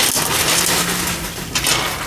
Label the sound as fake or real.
real